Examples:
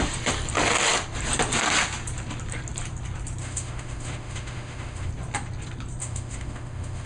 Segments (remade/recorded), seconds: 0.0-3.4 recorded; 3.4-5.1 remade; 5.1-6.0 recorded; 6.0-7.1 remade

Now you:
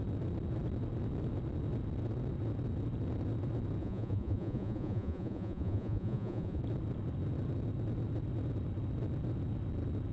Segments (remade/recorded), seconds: 0.0-3.8 recorded; 3.8-6.6 remade; 6.6-10.1 recorded

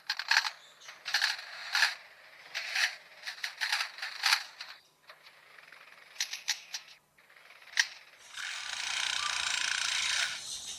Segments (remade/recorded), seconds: 0.0-1.6 recorded; 1.6-2.7 remade; 2.7-10.8 recorded

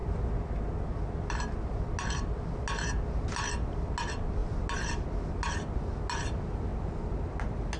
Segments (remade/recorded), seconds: 0.0-7.8 recorded

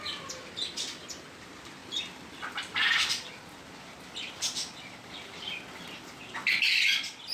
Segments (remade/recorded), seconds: 0.0-1.8 recorded; 1.8-3.3 remade; 3.3-7.3 recorded